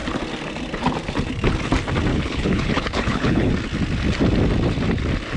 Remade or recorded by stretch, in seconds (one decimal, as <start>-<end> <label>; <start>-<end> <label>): 0.0-2.1 recorded; 2.1-3.5 remade; 3.5-5.4 recorded